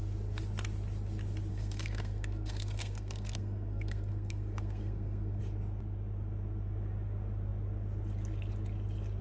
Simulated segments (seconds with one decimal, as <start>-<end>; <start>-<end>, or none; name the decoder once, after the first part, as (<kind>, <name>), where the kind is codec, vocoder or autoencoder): 1.5-5.4 (codec, SNAC)